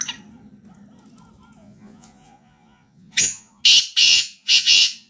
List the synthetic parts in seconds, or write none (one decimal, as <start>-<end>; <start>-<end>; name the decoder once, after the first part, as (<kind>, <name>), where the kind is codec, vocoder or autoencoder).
1.6-3.6 (vocoder, Vocos); 4.0-5.1